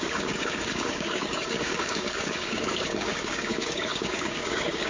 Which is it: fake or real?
fake